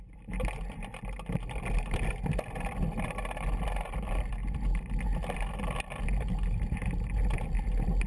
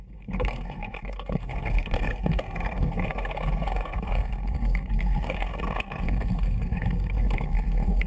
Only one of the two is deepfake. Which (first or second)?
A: second